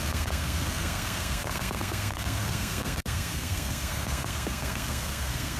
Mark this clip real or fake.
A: fake